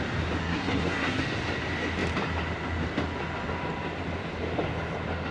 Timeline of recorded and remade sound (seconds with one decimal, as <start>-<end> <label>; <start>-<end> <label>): 0.0-0.4 recorded; 0.4-1.2 remade; 1.2-5.3 recorded